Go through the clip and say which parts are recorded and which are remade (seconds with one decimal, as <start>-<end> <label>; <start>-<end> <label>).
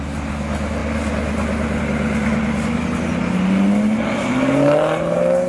0.0-5.5 recorded